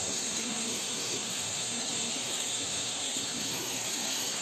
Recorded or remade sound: remade